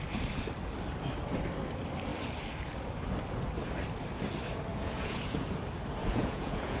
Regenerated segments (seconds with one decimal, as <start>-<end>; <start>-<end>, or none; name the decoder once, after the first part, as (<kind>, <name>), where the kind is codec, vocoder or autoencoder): 4.7-5.5 (vocoder, Vocos); 6.0-6.8